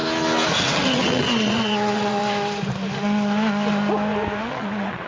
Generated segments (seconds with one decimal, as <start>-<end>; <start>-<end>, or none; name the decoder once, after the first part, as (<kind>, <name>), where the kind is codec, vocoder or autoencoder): 0.6-2.2 (vocoder, WaveNeXt); 4.4-5.1

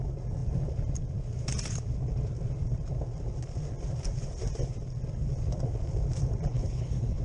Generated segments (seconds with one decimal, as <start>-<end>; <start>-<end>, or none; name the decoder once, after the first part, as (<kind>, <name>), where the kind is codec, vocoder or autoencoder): 6.5-7.2 (codec, HILCodec)

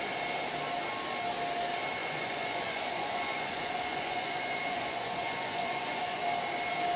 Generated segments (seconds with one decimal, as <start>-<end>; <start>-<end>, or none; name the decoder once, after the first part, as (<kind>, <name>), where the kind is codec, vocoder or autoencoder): 2.0-6.2 (vocoder, Vocos)

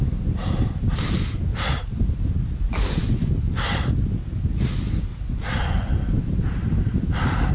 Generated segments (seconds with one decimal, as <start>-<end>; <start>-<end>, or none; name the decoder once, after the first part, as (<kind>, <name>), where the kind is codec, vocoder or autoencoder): 1.5-2.0 (vocoder, BigVGAN v2); 5.1-7.5

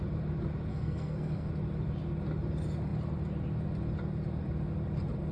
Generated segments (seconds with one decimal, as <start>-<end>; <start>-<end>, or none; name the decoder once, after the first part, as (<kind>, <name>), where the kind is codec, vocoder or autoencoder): 0.7-1.5 (codec, SNAC)

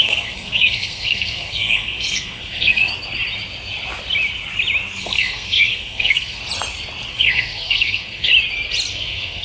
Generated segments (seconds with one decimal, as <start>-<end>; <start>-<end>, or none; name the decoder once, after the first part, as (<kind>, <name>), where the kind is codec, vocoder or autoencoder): 0.0-2.9 (codec, SNAC); 5.0-6.4; 7.1-8.3; 8.9-9.4

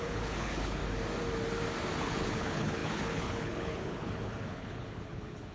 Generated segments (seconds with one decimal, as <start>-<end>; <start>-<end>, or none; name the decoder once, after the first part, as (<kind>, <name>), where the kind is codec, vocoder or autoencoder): 0.0-0.8 (codec, HILCodec); 2.0-5.5